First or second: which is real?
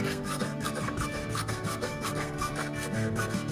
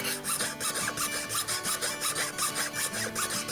second